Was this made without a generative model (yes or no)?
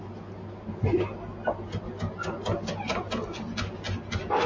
yes